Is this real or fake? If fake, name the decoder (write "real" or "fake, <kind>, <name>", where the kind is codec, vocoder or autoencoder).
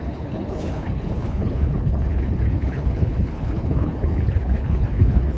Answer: fake, codec, HILCodec